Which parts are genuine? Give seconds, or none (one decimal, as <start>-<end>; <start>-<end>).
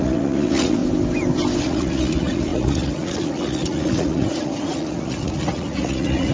0.8-1.6